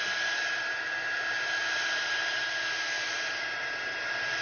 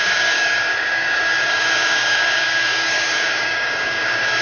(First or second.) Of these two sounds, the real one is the first